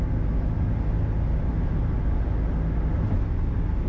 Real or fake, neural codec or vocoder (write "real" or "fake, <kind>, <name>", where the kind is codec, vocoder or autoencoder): real